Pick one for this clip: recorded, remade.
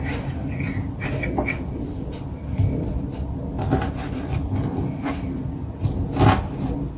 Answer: recorded